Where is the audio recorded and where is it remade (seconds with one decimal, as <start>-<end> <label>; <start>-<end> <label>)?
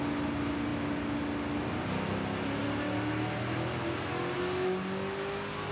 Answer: 0.0-5.7 recorded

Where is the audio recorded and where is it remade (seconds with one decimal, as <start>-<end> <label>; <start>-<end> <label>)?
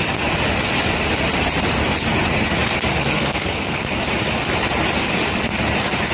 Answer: 0.0-3.0 recorded; 3.0-3.8 remade; 3.8-6.1 recorded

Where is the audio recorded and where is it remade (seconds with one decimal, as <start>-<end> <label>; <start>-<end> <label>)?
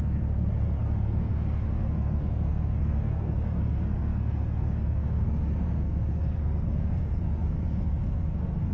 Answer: 0.0-8.7 remade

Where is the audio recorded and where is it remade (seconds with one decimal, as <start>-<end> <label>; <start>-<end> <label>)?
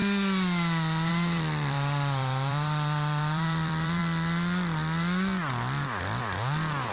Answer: 0.0-1.1 recorded; 1.1-4.0 remade; 4.0-6.9 recorded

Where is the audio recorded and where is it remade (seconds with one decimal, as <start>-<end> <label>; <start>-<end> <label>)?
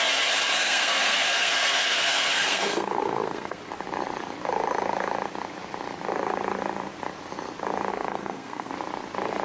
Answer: 0.0-0.5 recorded; 0.5-3.6 remade; 3.6-7.9 recorded; 7.9-8.7 remade; 8.7-9.4 recorded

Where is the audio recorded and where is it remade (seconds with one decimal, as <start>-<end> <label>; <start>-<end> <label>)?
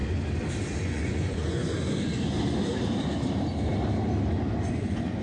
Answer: 0.0-0.8 recorded; 0.8-1.6 remade; 1.6-4.7 recorded; 4.7-5.2 remade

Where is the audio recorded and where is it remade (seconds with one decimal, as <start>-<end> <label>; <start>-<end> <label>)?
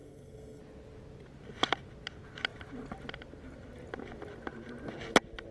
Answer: 0.0-0.6 remade; 0.6-5.5 recorded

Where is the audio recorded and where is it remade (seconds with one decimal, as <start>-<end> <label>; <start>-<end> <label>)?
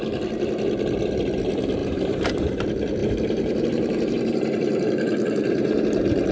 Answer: 0.0-1.8 recorded; 1.8-2.6 remade; 2.6-3.0 recorded; 3.0-6.3 remade